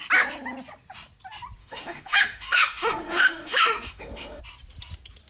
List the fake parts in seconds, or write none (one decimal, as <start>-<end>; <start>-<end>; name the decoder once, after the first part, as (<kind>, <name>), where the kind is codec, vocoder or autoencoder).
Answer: 1.6-4.4 (autoencoder, DAC-VAE)